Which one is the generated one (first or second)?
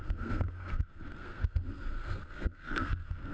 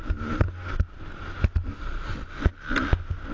first